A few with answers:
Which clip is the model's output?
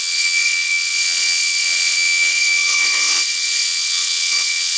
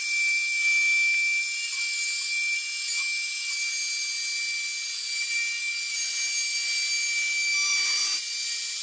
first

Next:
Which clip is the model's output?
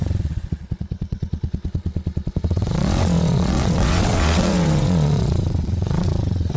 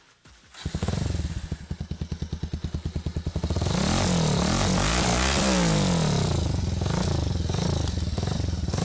first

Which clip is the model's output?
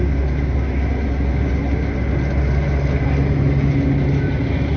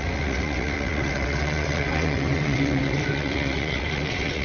second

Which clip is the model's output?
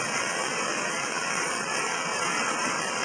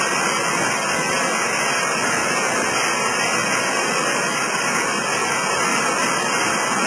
first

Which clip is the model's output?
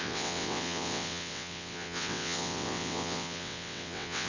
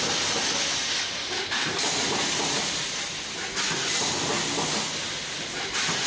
first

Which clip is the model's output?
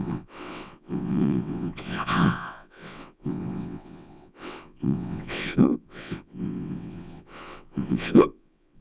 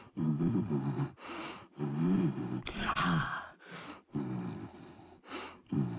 first